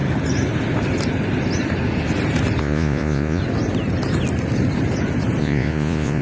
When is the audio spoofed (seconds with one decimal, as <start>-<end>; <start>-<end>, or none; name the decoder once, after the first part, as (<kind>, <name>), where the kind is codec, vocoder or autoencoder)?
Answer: 2.6-3.4 (vocoder, Vocos); 5.4-6.2